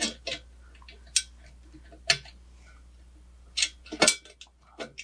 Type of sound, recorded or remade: recorded